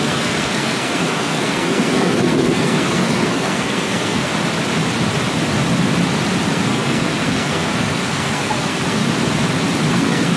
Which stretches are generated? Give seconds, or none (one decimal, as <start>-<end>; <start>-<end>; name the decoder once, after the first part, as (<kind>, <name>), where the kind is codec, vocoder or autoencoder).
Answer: 0.0-4.3 (codec, SNAC); 6.5-9.0; 9.9-10.4

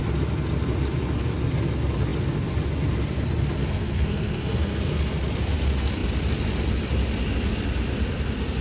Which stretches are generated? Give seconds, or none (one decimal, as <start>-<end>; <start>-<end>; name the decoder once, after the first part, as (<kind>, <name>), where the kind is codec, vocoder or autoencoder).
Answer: 3.6-5.0 (codec, SNAC)

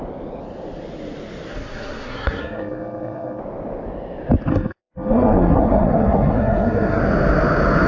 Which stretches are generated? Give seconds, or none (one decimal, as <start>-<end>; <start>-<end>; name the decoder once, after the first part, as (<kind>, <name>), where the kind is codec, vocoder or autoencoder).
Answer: 1.5-3.4 (codec, SNAC); 4.5-7.0

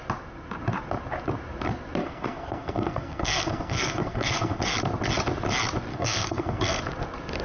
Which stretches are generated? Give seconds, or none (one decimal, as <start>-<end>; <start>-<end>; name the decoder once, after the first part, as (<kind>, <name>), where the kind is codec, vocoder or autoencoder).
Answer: 2.0-4.6 (codec, SNAC); 5.9-6.8